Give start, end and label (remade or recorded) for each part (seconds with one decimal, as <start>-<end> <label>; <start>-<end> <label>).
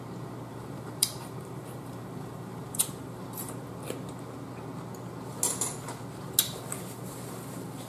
0.0-0.5 recorded; 0.5-3.6 remade; 3.6-7.9 recorded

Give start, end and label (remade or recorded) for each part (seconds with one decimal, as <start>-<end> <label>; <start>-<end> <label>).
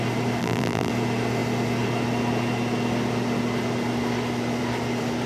0.0-0.4 recorded; 0.4-0.9 remade; 0.9-5.3 recorded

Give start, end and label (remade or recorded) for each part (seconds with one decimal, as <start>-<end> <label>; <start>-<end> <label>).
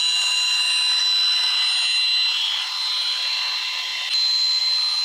0.0-5.0 recorded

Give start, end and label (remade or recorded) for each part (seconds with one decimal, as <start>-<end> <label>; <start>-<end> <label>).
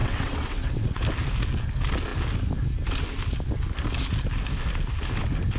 0.0-1.0 remade; 1.0-5.6 recorded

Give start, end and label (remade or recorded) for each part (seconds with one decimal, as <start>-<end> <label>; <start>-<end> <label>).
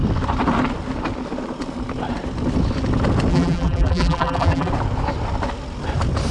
0.0-3.3 recorded; 3.3-4.7 remade; 4.7-6.3 recorded